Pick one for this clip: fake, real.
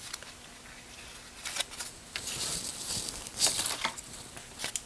real